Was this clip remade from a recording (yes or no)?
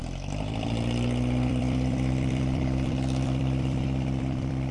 yes